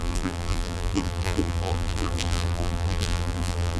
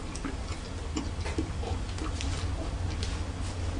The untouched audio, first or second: second